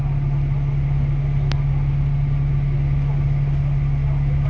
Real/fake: real